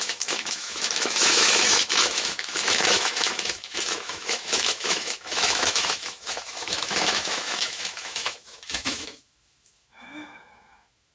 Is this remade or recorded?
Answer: remade